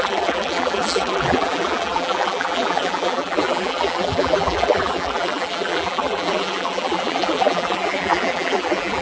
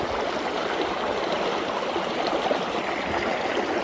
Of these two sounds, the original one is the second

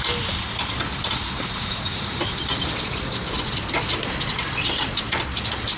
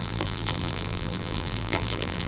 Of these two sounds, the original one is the first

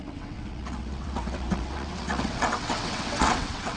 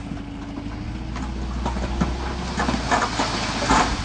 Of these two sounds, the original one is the second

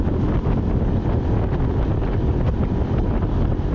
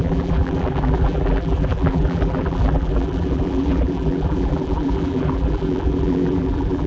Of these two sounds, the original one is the first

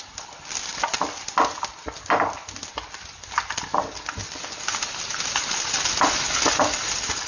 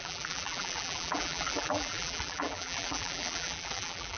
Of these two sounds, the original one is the first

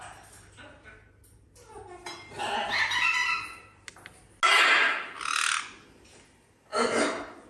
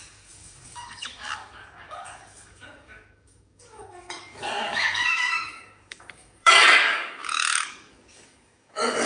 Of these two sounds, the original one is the first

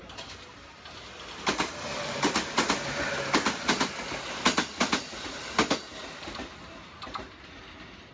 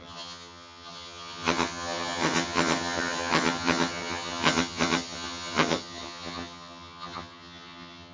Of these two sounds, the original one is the first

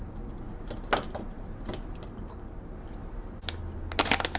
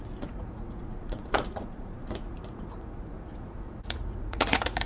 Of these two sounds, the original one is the first